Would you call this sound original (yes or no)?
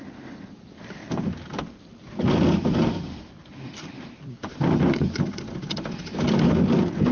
no